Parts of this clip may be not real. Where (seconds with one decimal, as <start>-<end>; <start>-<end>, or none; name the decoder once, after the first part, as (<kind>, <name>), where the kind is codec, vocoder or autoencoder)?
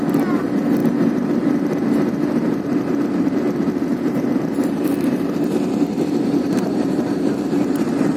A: 0.0-8.2 (vocoder, BigVGAN v2)